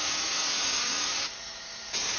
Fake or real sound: fake